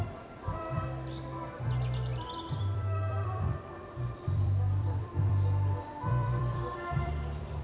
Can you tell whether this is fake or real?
fake